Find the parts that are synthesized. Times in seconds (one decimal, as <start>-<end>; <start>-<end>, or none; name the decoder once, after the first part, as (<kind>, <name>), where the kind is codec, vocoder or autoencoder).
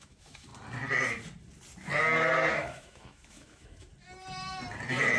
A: 0.0-0.5 (autoencoder, DAC-VAE); 2.5-3.9